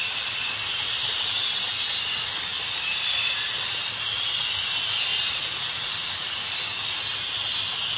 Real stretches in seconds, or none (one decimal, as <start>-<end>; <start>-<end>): 0.0-5.1; 6.6-8.0